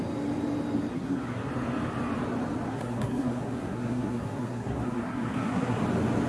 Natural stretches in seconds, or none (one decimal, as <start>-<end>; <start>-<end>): 0.0-0.9; 1.5-2.7; 5.8-6.3